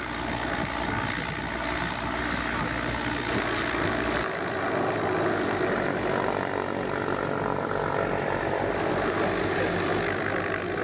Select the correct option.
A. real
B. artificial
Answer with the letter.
A